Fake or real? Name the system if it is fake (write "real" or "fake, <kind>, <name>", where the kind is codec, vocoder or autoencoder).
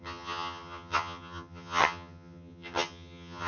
fake, vocoder, HiFi-GAN